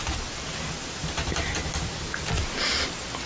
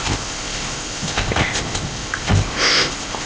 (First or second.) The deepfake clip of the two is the second